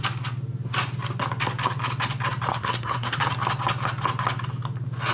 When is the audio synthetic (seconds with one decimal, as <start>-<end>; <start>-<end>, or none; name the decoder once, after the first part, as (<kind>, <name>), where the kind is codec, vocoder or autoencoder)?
2.5-3.2 (codec, SNAC)